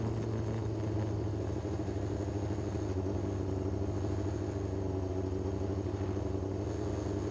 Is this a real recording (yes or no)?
yes